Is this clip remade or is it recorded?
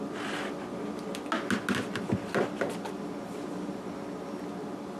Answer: recorded